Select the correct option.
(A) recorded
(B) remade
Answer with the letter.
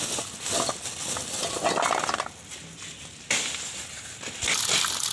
A